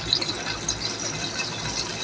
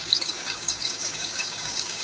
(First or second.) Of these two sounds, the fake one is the second